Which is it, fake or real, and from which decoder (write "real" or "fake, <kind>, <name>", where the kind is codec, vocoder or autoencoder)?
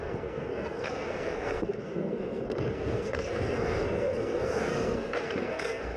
fake, codec, SNAC